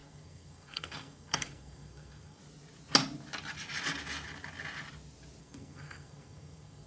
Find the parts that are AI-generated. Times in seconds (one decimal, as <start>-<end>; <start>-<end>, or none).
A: 0.0-2.4; 5.4-6.9